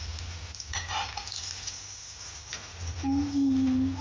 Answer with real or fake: real